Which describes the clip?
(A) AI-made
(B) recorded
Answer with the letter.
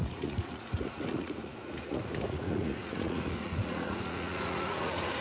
A